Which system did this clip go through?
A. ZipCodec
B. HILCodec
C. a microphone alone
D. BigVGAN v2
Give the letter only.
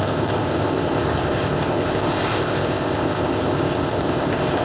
A